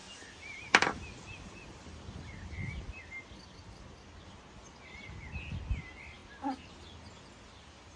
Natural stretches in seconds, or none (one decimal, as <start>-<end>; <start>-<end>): 0.0-8.0